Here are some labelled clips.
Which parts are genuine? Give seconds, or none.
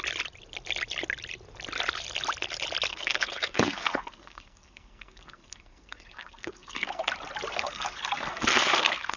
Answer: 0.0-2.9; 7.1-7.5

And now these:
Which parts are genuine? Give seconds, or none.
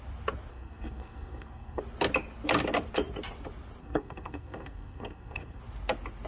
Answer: 0.0-0.5; 1.8-3.8; 5.6-6.3